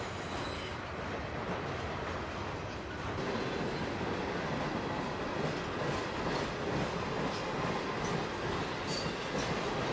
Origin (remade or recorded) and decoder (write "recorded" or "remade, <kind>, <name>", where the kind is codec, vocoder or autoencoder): recorded